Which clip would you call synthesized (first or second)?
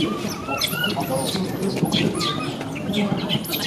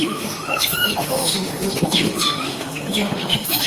second